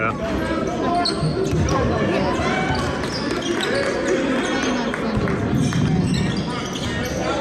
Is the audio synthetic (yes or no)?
no